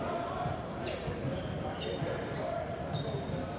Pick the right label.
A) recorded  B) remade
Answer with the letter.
A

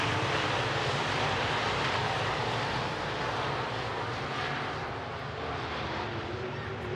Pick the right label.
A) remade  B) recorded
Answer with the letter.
A